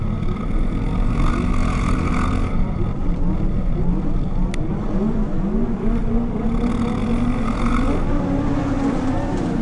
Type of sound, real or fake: real